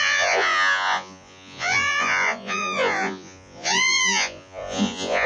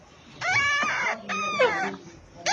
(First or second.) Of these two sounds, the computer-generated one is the first